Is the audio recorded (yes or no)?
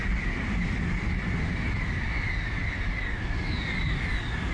yes